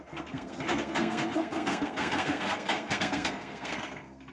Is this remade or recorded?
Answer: remade